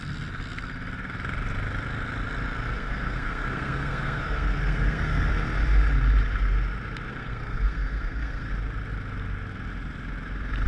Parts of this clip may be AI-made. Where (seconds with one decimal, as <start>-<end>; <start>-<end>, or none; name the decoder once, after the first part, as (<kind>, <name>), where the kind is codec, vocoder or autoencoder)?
2.7-5.3 (codec, SNAC); 7.1-8.5